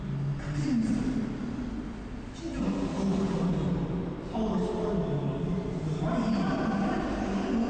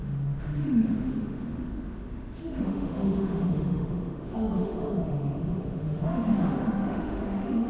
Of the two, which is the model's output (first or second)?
second